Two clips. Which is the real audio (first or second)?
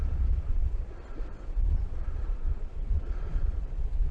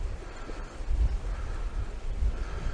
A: second